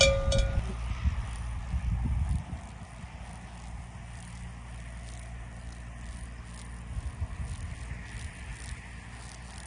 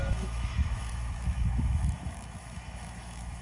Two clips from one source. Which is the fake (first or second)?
second